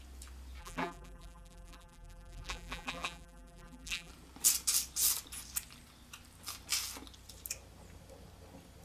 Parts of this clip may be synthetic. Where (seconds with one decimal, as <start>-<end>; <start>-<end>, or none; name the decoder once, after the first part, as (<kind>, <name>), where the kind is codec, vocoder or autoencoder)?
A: 0.6-4.1 (vocoder, BigVGAN v2)